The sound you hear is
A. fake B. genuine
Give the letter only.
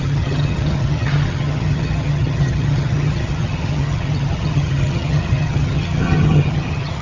A